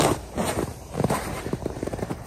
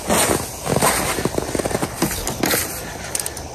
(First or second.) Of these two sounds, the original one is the second